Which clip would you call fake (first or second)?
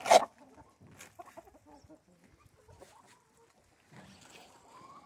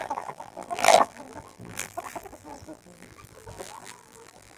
second